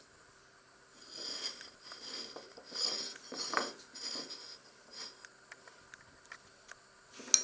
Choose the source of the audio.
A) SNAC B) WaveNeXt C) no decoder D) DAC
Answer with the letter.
C